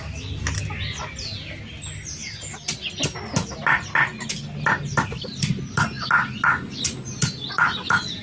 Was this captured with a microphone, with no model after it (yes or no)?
yes